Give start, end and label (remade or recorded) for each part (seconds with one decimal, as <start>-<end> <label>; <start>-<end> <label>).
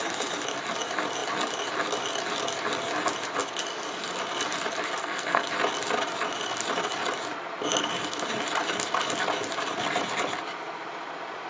0.0-5.0 recorded; 5.0-5.5 remade; 5.5-11.5 recorded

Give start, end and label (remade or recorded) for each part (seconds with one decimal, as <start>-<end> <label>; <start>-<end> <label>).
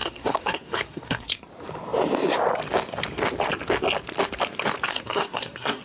0.0-1.4 remade; 1.4-4.9 recorded; 4.9-5.8 remade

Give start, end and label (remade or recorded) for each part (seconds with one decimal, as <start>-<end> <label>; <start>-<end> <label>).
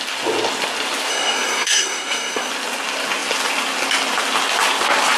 0.0-1.1 recorded; 1.1-2.5 remade; 2.5-5.2 recorded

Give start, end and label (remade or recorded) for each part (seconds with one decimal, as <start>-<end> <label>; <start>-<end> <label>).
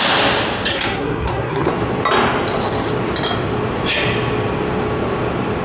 0.0-0.7 recorded; 0.7-1.7 remade; 1.7-5.6 recorded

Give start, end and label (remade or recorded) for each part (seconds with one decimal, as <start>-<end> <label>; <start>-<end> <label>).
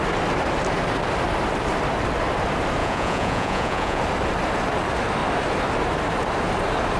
0.0-2.8 recorded; 2.8-4.0 remade; 4.0-7.0 recorded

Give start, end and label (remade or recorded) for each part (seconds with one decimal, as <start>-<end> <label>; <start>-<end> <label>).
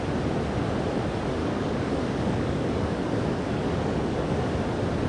0.0-1.4 recorded; 1.4-4.5 remade; 4.5-5.1 recorded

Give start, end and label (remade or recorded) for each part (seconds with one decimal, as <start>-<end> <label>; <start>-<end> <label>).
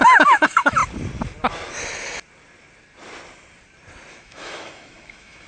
0.0-0.8 remade; 0.8-4.1 recorded; 4.1-5.5 remade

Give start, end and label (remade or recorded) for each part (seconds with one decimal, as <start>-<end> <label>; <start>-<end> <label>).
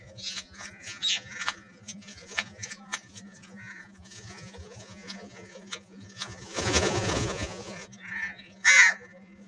0.0-9.5 remade